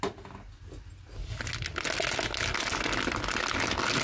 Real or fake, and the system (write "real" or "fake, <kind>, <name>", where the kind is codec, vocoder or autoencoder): real